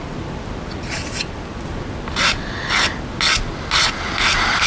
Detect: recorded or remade recorded